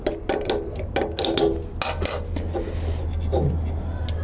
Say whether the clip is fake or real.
real